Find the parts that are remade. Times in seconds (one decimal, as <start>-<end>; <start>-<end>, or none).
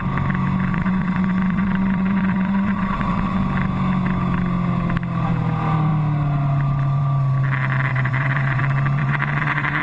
0.7-3.4; 7.9-8.6; 9.0-9.8